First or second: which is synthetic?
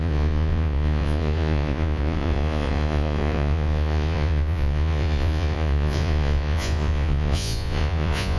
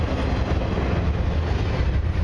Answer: first